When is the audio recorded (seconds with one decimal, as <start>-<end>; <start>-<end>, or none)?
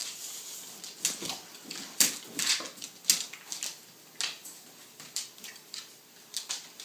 0.0-4.4; 6.1-6.8